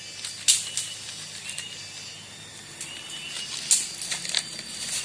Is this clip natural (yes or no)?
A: yes